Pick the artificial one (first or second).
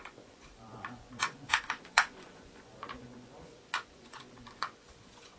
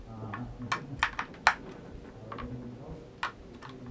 first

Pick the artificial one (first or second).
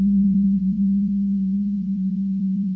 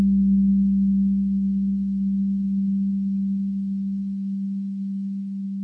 first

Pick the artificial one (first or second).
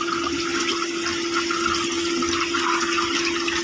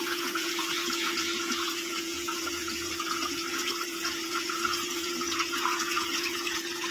second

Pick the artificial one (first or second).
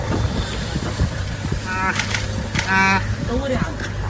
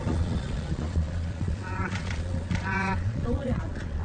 second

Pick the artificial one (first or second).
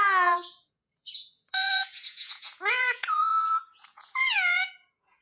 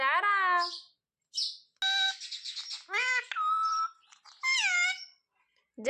first